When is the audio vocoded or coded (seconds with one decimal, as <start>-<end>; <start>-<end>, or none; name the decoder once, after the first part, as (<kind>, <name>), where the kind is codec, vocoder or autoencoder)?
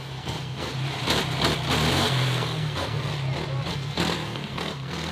0.0-0.7 (codec, SNAC); 1.9-3.1; 3.7-5.1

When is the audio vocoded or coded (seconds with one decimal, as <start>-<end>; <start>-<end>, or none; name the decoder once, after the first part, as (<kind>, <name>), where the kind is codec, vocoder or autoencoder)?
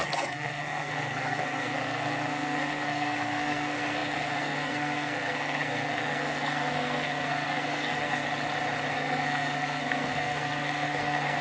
0.0-8.2 (codec, SNAC); 8.9-11.4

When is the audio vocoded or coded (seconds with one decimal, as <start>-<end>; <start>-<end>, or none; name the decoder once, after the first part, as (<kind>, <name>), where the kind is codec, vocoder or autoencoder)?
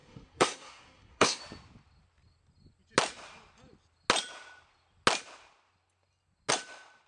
0.0-1.4 (codec, SNAC)